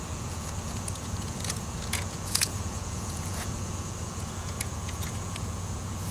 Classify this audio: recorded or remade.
remade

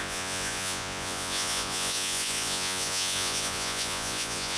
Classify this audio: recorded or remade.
remade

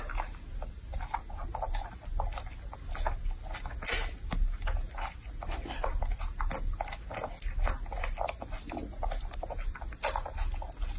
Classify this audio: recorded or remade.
recorded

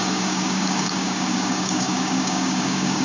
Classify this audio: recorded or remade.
remade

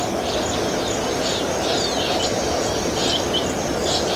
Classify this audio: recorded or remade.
recorded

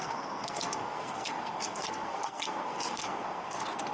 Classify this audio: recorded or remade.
remade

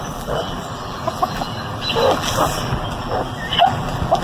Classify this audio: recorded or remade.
remade